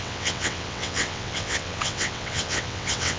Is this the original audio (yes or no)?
no